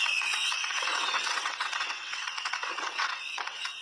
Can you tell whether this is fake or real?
fake